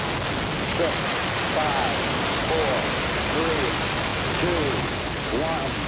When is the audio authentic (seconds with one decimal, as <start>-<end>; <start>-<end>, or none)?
0.0-5.9